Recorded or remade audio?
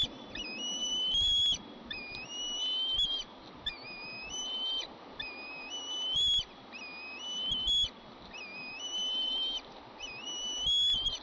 recorded